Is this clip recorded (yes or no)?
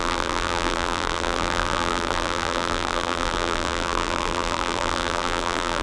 no